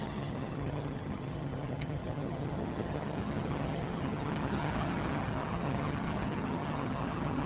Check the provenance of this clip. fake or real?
fake